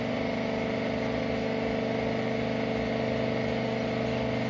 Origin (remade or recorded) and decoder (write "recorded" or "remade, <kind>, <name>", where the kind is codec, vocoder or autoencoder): recorded